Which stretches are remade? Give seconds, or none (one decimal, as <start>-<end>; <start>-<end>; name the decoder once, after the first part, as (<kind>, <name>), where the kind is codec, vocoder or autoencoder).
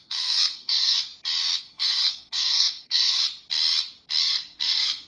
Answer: 0.0-1.1 (codec, SNAC); 1.6-3.2; 4.2-5.1